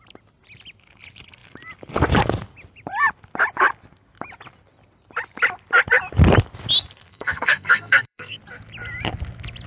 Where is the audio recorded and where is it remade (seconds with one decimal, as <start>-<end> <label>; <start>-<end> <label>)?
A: 0.0-7.1 recorded; 7.1-8.4 remade; 8.4-9.7 recorded